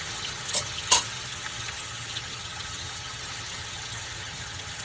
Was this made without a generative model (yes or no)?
no